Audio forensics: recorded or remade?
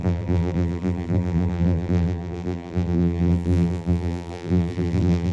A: remade